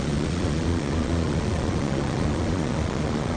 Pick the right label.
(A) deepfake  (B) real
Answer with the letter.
A